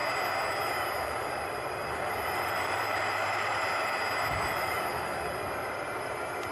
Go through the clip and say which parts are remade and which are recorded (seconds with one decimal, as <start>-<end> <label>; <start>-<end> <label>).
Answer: 0.0-1.0 recorded; 1.0-3.7 remade; 3.7-4.3 recorded; 4.3-6.5 remade